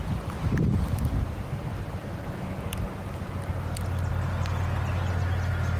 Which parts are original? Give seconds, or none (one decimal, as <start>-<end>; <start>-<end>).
0.0-5.8